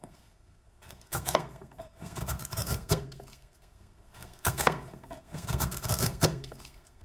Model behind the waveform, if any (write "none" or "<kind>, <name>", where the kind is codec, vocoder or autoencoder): codec, SNAC